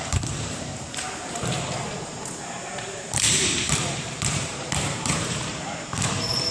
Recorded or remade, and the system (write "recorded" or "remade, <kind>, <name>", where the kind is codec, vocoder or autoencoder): remade, vocoder, BigVGAN v2